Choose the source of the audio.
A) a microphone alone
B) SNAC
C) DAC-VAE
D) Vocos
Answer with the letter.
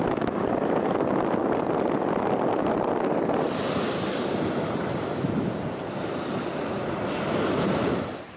A